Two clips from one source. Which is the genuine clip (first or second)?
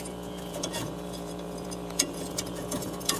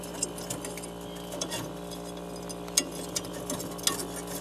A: second